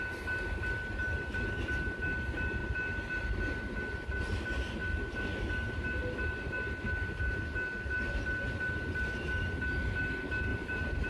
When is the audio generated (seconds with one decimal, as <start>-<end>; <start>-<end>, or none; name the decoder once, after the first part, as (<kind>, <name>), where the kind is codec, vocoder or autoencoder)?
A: 10.5-11.1 (vocoder, BigVGAN v2)